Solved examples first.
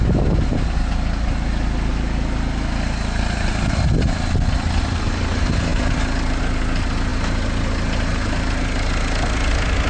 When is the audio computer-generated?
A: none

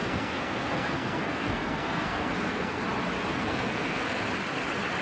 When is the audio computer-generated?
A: 0.0-2.8 (codec, SNAC); 3.3-4.2

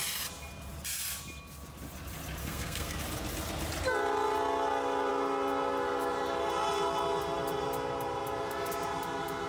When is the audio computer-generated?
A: 2.4-3.0 (codec, SNAC)

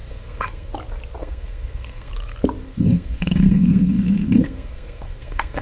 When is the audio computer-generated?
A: 0.0-0.7 (codec, SNAC); 1.2-2.1; 2.6-5.6

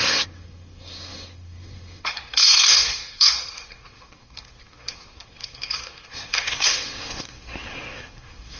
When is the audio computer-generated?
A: 0.0-8.6 (codec, SNAC)

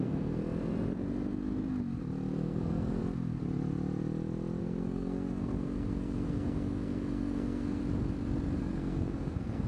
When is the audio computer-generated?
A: 0.0-0.4 (codec, SNAC); 2.3-3.0; 4.6-7.8; 8.6-9.7

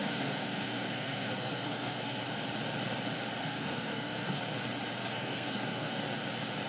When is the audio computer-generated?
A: 0.0-2.2 (codec, SNAC); 3.4-4.4; 5.0-6.0

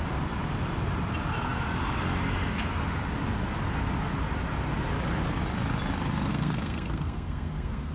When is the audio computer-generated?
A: 6.3-7.9 (codec, SNAC)